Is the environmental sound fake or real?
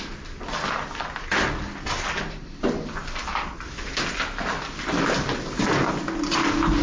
real